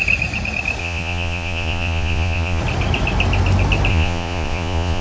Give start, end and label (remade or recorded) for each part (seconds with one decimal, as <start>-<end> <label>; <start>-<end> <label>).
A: 0.0-0.8 recorded; 0.8-2.6 remade; 2.6-3.9 recorded; 3.9-5.0 remade